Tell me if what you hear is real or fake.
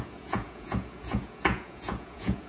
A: fake